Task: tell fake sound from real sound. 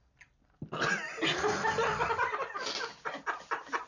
real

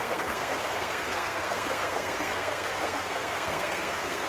fake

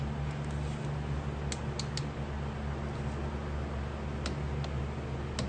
real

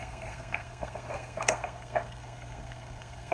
fake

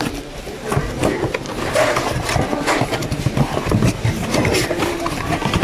real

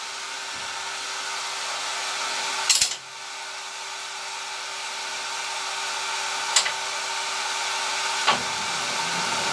real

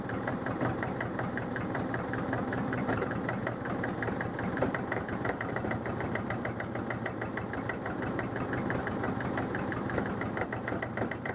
fake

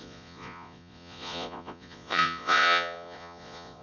fake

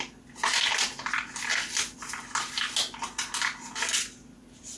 real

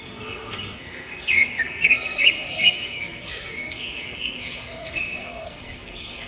fake